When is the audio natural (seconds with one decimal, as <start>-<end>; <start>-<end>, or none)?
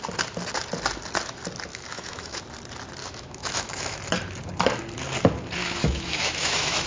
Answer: 0.0-1.7; 2.4-3.0; 4.0-5.6